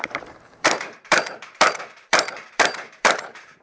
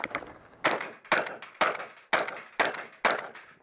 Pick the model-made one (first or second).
first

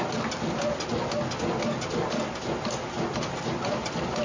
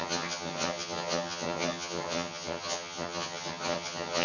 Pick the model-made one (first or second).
second